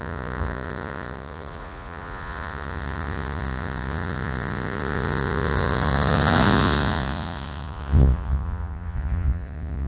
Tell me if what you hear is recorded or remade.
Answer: remade